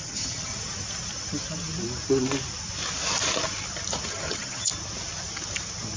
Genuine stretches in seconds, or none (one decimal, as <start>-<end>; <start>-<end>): 0.5-4.1; 4.7-6.0